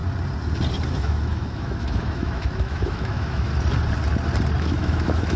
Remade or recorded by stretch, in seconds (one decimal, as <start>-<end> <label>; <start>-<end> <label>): 0.0-0.9 recorded; 0.9-3.5 remade; 3.5-4.6 recorded; 4.6-5.4 remade